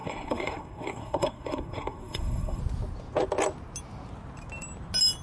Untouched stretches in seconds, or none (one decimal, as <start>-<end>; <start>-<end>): 2.6-5.2